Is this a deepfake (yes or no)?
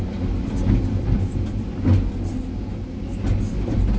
no